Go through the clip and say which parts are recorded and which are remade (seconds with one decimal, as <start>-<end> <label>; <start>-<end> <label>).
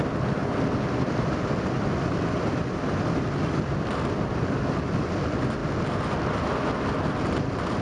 0.0-7.8 recorded